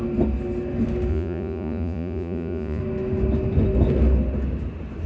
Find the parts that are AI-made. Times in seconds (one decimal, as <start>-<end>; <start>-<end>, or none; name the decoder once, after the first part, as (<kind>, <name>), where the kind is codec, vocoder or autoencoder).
1.1-2.8 (vocoder, Vocos)